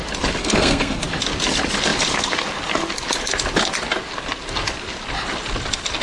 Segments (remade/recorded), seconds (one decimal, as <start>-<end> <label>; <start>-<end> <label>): 0.0-0.4 recorded; 0.4-1.0 remade; 1.0-6.0 recorded